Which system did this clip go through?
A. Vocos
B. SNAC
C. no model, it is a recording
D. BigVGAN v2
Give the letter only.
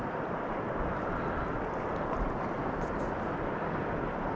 C